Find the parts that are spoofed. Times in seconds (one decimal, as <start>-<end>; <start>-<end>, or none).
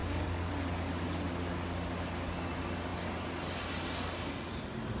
0.0-0.5